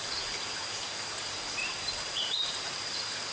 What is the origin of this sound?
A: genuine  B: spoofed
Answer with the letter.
B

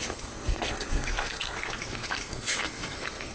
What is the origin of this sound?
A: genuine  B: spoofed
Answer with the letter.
B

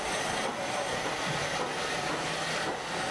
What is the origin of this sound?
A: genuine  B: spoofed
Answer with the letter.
A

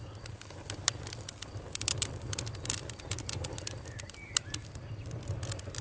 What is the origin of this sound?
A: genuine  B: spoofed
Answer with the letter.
A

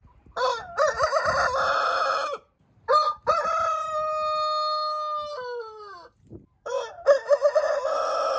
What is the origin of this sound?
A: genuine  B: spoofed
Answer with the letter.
A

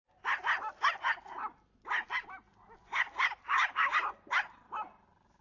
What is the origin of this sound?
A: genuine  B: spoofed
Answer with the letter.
A